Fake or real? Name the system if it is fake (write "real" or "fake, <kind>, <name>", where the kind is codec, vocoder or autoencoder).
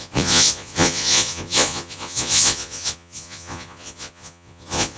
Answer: fake, vocoder, Vocos